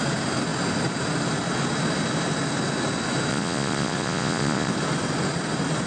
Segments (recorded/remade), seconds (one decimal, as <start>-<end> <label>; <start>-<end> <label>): 0.0-3.3 recorded; 3.3-4.7 remade; 4.7-5.9 recorded